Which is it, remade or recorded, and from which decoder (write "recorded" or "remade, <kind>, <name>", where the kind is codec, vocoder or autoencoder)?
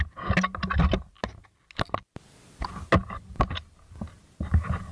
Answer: recorded